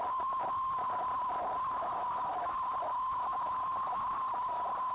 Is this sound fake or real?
real